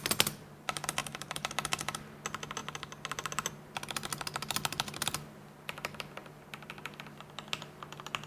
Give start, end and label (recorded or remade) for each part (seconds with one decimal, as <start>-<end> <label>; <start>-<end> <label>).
0.0-1.0 recorded; 1.0-1.5 remade; 1.5-8.3 recorded